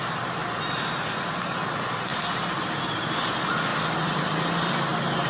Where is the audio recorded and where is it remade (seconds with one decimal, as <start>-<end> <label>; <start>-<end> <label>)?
0.0-5.3 recorded